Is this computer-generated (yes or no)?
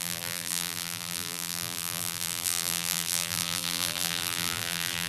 yes